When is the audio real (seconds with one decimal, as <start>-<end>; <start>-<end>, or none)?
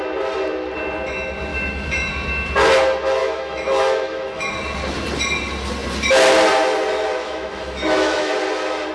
0.0-1.5; 2.1-3.2; 4.5-7.2; 8.3-8.9